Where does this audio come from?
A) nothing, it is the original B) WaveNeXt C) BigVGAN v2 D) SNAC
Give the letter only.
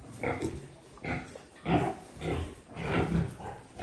A